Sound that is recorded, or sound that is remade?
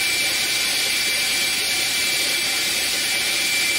remade